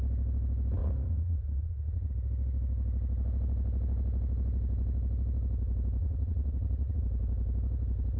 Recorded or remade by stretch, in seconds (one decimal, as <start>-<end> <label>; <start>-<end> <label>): 0.0-0.8 recorded; 0.8-2.1 remade; 2.1-6.0 recorded; 6.0-7.0 remade; 7.0-8.2 recorded